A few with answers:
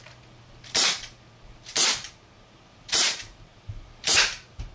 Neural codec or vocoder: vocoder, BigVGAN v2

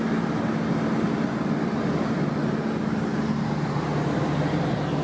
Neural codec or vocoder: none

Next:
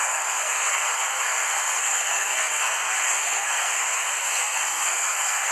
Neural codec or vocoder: codec, SNAC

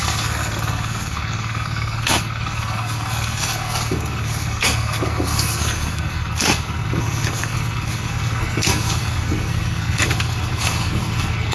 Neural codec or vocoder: codec, SNAC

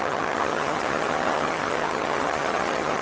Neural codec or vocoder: vocoder, HiFi-GAN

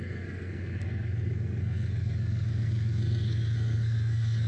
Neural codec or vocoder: codec, SNAC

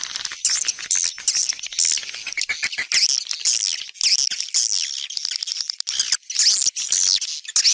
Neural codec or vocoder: none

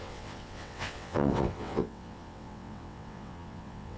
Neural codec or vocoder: vocoder, WaveNeXt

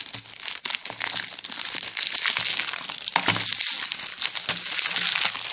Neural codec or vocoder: none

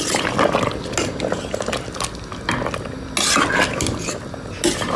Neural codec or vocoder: none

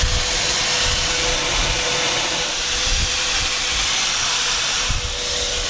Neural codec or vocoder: none